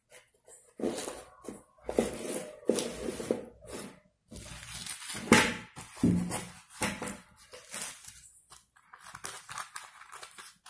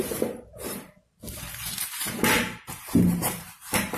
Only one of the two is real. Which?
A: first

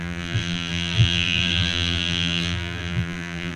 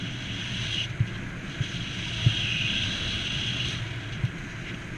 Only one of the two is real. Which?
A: second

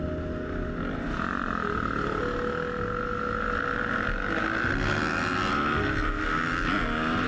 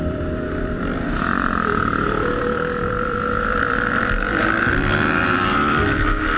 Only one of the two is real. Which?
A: first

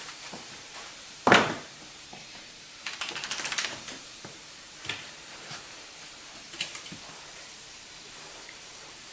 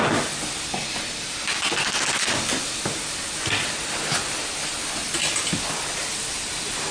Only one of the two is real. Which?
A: second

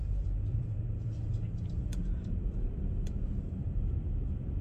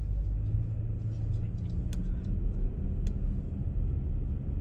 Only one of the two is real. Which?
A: second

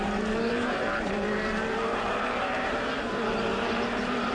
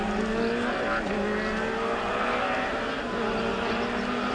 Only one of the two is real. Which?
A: second